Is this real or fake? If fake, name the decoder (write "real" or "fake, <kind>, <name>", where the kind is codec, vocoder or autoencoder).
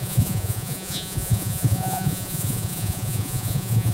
fake, vocoder, Vocos